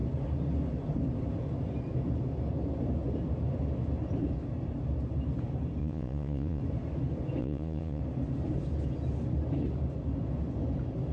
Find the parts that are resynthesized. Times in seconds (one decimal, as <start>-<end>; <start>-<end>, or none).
5.8-6.6; 7.4-8.0